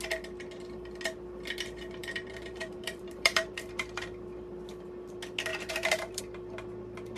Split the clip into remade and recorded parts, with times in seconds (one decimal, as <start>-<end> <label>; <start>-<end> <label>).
0.0-2.0 recorded; 2.0-3.6 remade; 3.6-5.5 recorded; 5.5-6.2 remade; 6.2-7.2 recorded